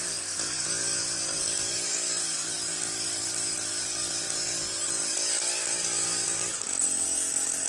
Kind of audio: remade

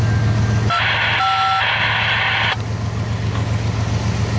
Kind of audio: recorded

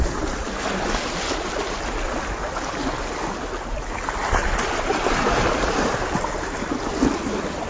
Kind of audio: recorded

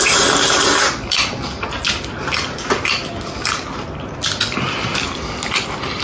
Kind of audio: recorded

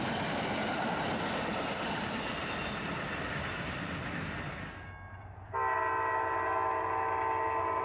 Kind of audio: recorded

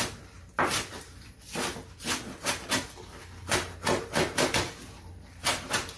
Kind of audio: recorded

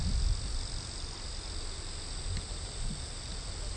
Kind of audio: recorded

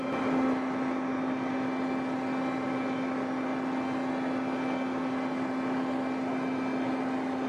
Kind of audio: recorded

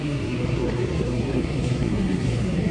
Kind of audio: remade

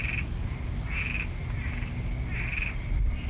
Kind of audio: recorded